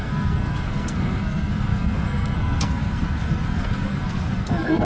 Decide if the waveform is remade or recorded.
remade